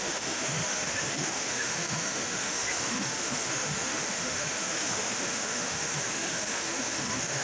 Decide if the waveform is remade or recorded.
remade